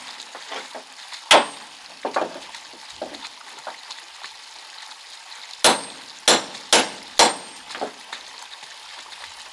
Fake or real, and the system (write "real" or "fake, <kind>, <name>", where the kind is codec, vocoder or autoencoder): real